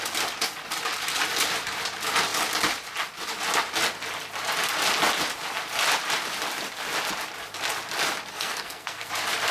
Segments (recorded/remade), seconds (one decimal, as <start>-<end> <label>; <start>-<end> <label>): 0.0-8.3 recorded; 8.3-9.1 remade; 9.1-9.5 recorded